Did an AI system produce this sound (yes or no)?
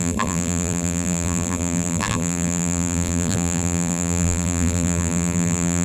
yes